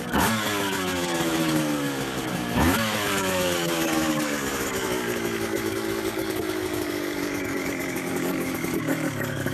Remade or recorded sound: remade